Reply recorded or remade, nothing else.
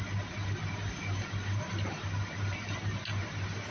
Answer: recorded